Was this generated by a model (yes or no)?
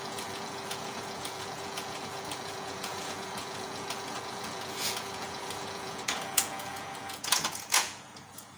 yes